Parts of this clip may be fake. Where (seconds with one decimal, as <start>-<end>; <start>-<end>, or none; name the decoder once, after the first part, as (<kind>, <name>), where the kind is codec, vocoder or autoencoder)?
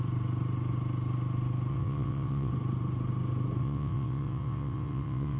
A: 1.7-2.5 (vocoder, WaveNeXt); 3.6-5.4